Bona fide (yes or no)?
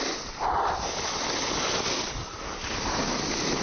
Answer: yes